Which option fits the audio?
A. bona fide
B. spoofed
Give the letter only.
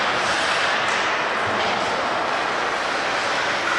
A